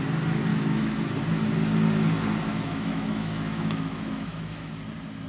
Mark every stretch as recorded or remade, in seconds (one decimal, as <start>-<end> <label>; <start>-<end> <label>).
0.0-0.5 recorded; 0.5-1.1 remade; 1.1-2.5 recorded; 2.5-4.7 remade; 4.7-5.3 recorded